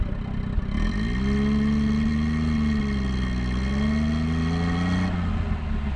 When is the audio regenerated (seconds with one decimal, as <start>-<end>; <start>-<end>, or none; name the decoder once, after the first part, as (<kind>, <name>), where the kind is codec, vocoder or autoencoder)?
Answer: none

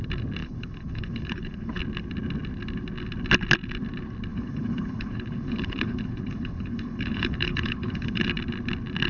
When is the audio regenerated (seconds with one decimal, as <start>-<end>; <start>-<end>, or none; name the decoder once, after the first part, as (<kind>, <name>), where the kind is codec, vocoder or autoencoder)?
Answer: 0.4-1.8 (codec, HILCodec); 4.3-8.3

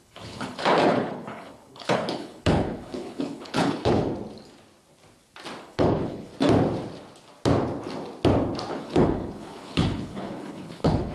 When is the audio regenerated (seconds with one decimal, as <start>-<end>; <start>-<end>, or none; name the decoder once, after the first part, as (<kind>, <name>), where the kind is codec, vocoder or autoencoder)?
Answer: 0.0-4.1 (codec, HILCodec); 5.6-6.3; 8.7-11.1

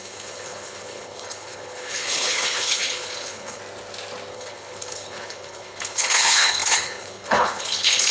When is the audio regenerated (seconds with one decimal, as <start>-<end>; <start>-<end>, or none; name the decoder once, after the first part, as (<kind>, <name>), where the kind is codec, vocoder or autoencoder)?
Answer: 0.0-3.6 (codec, HILCodec); 4.3-8.1

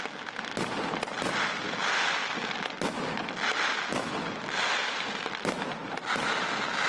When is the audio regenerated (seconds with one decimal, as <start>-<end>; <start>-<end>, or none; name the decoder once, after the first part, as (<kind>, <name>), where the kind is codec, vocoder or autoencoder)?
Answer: none

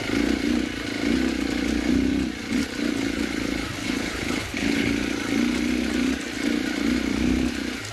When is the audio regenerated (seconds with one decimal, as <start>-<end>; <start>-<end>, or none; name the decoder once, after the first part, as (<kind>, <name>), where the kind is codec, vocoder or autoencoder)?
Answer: 3.8-4.9 (codec, HILCodec)

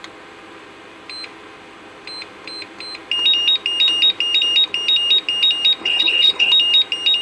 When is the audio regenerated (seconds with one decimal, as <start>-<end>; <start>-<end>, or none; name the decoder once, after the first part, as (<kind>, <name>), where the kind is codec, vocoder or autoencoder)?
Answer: 5.8-6.5 (codec, HILCodec)

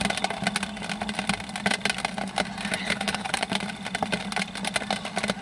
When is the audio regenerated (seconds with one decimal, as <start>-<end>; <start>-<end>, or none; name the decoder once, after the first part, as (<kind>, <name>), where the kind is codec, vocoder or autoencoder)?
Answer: 2.8-3.6 (codec, HILCodec)